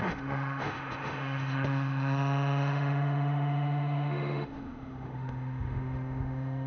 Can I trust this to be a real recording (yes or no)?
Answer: no